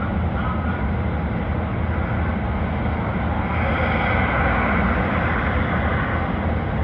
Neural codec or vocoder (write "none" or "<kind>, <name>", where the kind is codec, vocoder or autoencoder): none